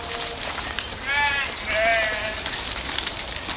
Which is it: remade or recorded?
recorded